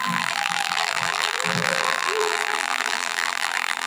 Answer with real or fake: fake